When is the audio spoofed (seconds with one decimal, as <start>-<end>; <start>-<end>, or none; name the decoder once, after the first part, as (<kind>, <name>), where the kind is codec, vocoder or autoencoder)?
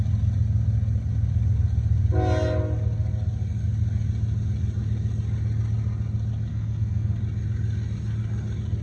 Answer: 6.5-7.2 (codec, SNAC)